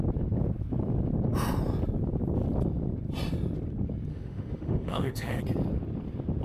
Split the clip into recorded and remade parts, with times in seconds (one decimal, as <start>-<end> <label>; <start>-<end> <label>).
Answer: 0.0-4.1 recorded; 4.1-5.4 remade; 5.4-6.4 recorded